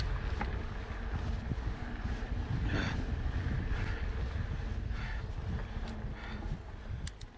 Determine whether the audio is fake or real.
real